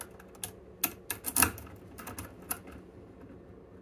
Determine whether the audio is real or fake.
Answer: real